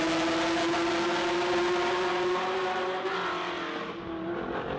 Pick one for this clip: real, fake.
real